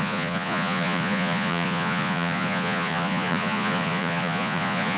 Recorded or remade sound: remade